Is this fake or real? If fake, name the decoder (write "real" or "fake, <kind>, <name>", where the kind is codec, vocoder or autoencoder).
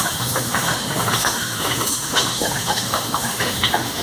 fake, autoencoder, DAC-VAE